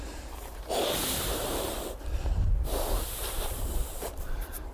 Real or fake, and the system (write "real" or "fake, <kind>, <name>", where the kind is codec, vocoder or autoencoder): fake, vocoder, BigVGAN v2